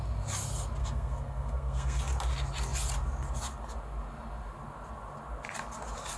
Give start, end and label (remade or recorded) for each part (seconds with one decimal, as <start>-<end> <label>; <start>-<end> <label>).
0.0-0.8 recorded; 0.8-2.0 remade; 2.0-6.2 recorded